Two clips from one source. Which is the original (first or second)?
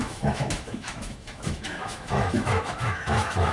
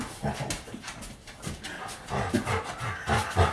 second